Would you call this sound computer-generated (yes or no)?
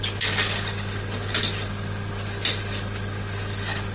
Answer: no